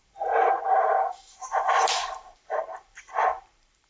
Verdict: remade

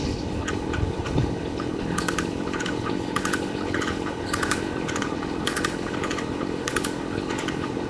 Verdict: remade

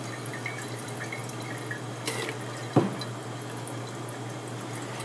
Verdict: recorded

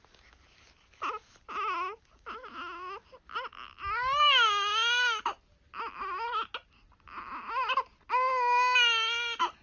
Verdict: recorded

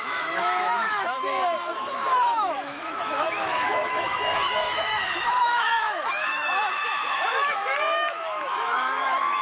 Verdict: remade